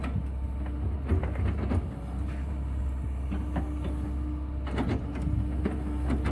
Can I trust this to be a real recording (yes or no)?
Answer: yes